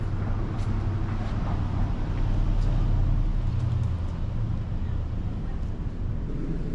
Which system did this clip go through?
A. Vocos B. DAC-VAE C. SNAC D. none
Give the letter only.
D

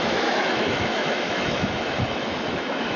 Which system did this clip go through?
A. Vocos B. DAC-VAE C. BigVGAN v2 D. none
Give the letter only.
B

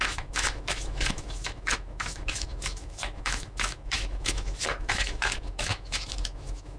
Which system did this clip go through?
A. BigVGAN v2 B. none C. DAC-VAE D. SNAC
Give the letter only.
C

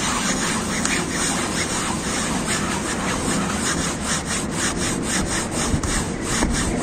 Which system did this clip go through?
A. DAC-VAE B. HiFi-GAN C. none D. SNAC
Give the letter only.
C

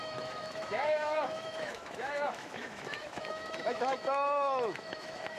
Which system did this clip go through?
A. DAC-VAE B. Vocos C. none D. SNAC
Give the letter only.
A